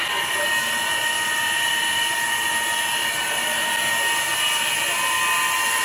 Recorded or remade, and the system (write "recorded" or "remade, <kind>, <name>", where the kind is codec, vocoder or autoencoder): recorded